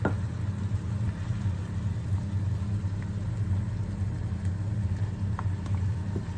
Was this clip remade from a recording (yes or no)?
no